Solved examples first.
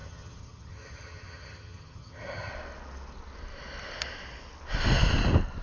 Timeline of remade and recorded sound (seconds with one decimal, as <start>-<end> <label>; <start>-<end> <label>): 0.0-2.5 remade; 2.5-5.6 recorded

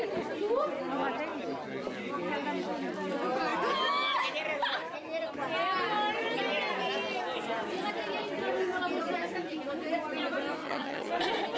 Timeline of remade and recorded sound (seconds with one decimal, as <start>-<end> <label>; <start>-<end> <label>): 0.0-10.6 recorded; 10.6-11.1 remade; 11.1-11.6 recorded

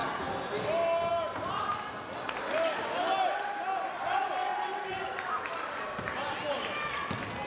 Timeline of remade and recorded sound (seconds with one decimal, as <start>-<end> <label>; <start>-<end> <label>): 0.0-7.5 recorded

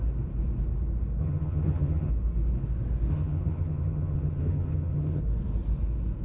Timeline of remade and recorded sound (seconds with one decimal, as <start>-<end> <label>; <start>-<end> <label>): 0.0-1.2 recorded; 1.2-2.1 remade; 2.1-3.1 recorded; 3.1-5.2 remade; 5.2-6.2 recorded

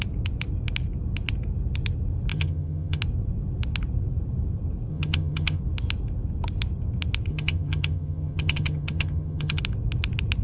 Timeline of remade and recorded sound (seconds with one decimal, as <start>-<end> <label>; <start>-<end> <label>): 0.0-2.3 recorded; 2.3-3.0 remade; 3.0-4.9 recorded; 4.9-5.6 remade; 5.6-7.3 recorded; 7.3-9.6 remade; 9.6-10.4 recorded

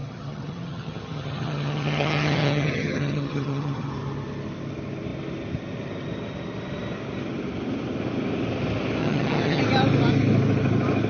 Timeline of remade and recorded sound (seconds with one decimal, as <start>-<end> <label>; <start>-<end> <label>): 0.0-3.9 remade; 3.9-9.0 recorded; 9.0-9.6 remade; 9.6-11.1 recorded

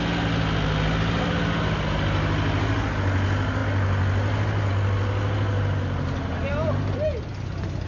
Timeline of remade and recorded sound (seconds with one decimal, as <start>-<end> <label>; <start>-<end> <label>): 0.0-7.9 recorded

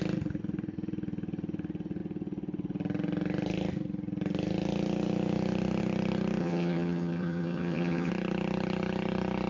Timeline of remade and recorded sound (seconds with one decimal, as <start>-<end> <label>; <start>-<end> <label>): 0.0-6.4 recorded; 6.4-8.1 remade; 8.1-9.5 recorded